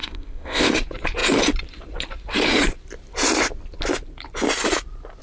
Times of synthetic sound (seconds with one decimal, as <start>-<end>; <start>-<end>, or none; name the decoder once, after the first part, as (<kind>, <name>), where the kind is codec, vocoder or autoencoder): 0.0-0.7 (codec, ZipCodec)